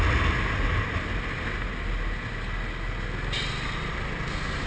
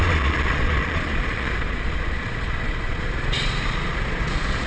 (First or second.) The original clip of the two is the first